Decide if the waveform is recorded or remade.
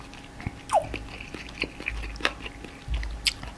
recorded